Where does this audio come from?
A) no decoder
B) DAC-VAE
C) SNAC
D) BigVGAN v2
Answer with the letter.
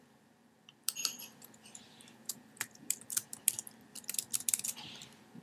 D